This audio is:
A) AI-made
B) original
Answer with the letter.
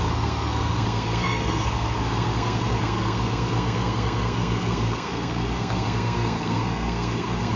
A